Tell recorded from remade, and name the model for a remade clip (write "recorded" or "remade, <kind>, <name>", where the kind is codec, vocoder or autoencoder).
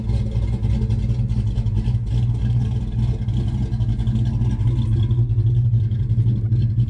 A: recorded